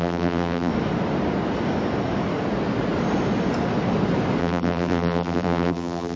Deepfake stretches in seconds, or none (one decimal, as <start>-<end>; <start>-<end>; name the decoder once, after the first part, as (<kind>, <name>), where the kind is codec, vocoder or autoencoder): 0.0-0.7 (vocoder, BigVGAN v2); 4.4-6.2